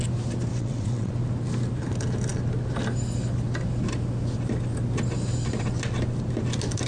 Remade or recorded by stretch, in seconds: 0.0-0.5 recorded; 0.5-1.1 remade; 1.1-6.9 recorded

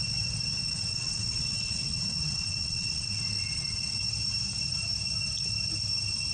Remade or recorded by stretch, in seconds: 0.0-0.6 recorded; 0.6-4.0 remade; 4.0-6.3 recorded

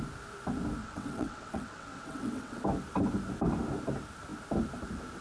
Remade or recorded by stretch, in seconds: 0.0-0.8 recorded; 0.8-2.6 remade; 2.6-5.2 recorded

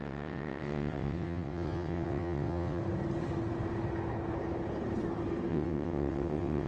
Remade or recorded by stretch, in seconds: 0.0-2.8 remade; 2.8-5.5 recorded; 5.5-6.7 remade

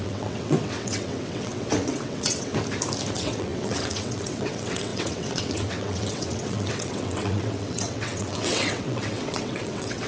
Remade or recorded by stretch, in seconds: 0.0-2.5 remade; 2.5-3.1 recorded; 3.1-10.1 remade